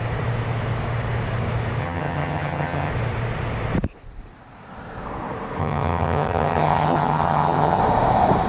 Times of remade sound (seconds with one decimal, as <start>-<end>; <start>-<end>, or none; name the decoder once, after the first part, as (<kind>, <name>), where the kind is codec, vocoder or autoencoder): 1.8-2.9 (vocoder, HiFi-GAN); 5.6-7.8